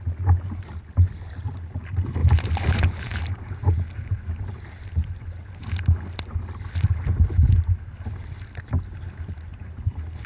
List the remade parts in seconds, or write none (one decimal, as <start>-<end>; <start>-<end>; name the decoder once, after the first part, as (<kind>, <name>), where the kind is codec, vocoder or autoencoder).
2.2-4.3 (vocoder, BigVGAN v2); 9.5-10.3